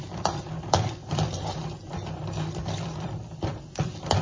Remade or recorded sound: remade